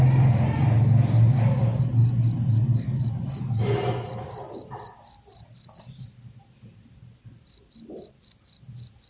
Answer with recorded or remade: recorded